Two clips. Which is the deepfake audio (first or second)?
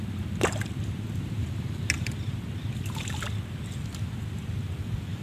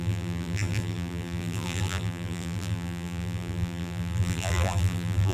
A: second